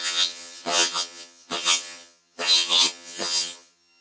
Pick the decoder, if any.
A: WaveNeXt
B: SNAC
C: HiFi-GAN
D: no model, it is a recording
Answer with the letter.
C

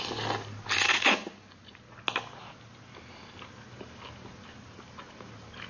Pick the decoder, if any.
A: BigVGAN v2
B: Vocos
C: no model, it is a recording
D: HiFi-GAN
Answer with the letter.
C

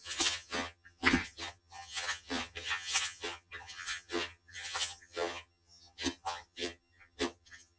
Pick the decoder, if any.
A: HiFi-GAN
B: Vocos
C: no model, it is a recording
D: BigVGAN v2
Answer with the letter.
A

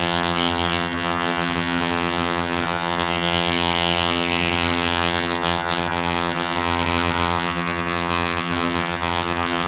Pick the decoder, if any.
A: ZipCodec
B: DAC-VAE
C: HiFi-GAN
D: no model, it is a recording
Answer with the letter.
C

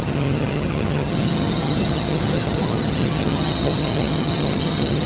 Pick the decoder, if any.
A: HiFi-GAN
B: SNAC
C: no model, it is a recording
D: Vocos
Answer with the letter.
A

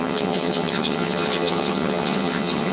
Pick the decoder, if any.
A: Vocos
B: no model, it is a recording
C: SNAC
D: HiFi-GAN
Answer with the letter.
D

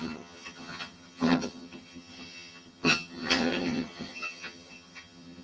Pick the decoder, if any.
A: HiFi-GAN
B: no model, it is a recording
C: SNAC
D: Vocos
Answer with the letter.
A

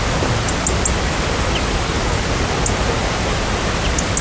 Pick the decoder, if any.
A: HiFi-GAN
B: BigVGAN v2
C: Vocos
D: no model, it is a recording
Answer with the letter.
D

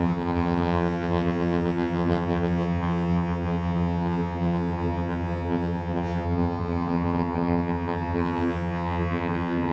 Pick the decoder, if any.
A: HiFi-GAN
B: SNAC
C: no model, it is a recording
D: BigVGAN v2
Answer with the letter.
A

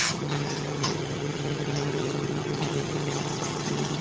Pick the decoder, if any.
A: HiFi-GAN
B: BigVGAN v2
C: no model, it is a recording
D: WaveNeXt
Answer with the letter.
A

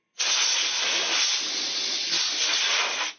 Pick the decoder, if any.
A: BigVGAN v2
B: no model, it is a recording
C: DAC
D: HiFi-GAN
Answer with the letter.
B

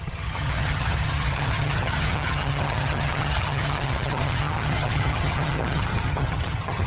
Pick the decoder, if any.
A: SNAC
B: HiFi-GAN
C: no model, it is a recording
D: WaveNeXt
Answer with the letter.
B